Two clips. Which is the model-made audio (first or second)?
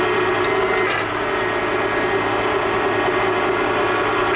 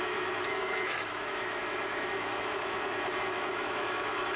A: second